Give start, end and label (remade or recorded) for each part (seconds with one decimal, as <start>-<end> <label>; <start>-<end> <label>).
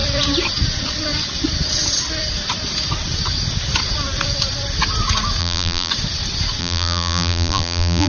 0.0-5.4 recorded; 5.4-5.9 remade; 5.9-6.6 recorded; 6.6-8.1 remade